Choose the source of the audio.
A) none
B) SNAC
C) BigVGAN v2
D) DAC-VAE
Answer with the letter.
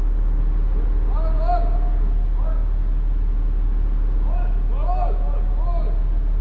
A